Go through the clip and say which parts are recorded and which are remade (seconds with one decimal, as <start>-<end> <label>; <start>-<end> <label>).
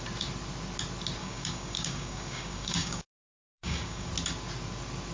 0.0-1.2 recorded; 1.2-4.1 remade; 4.1-5.1 recorded